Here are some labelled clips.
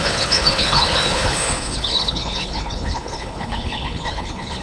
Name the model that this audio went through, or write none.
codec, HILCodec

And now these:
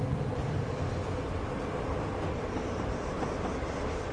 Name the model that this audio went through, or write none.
none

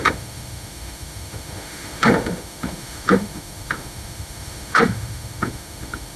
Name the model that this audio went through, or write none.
autoencoder, DAC-VAE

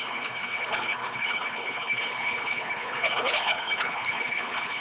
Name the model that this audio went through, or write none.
codec, HILCodec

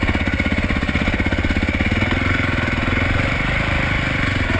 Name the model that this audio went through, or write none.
none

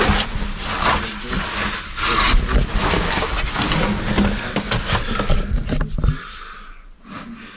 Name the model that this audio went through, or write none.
none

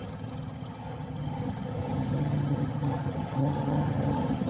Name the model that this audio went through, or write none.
vocoder, HiFi-GAN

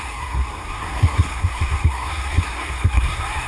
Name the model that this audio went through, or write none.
codec, SNAC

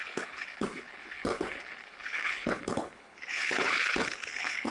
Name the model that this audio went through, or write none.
codec, HILCodec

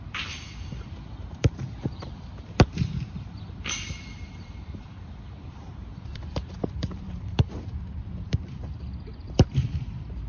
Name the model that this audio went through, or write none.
vocoder, BigVGAN v2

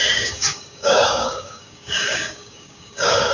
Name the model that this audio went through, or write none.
codec, DAC